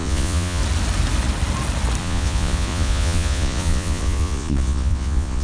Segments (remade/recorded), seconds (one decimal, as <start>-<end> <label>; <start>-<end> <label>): 0.0-0.6 remade; 0.6-2.0 recorded; 2.0-5.4 remade